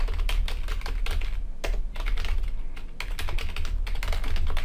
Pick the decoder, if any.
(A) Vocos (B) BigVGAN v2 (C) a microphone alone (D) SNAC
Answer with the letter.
C